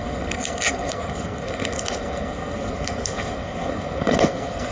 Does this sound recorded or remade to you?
remade